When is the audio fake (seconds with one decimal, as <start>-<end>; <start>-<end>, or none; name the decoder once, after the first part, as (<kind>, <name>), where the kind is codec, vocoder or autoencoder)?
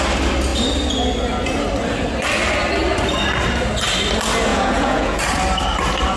4.5-5.2 (vocoder, Vocos)